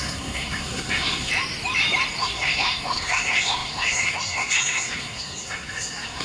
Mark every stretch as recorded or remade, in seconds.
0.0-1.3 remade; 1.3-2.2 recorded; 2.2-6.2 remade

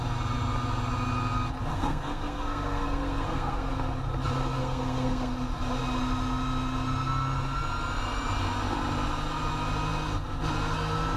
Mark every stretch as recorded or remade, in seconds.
0.0-1.7 recorded; 1.7-3.7 remade; 3.7-4.6 recorded; 4.6-5.3 remade; 5.3-11.2 recorded

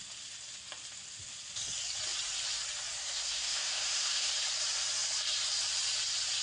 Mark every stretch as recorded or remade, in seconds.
0.0-3.0 recorded; 3.0-4.3 remade; 4.3-6.4 recorded

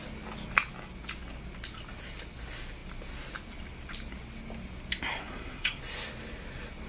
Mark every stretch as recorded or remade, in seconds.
0.0-5.2 recorded; 5.2-5.8 remade; 5.8-6.9 recorded

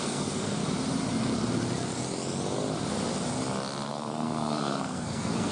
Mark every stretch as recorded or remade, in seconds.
0.0-0.6 remade; 0.6-3.9 recorded; 3.9-5.5 remade

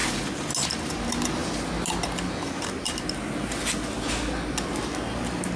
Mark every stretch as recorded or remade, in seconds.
0.0-5.6 recorded

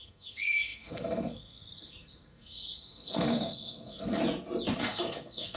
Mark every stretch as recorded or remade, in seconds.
0.0-4.2 remade; 4.2-4.8 recorded; 4.8-5.6 remade